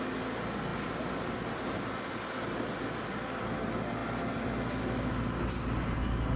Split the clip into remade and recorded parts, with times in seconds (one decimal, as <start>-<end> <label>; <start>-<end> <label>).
0.0-6.4 recorded